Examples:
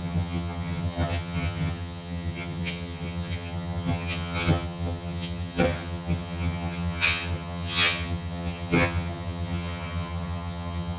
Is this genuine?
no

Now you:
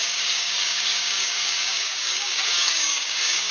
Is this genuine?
no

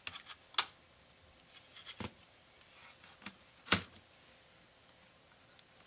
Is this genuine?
yes